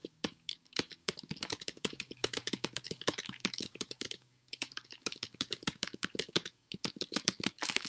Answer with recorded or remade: remade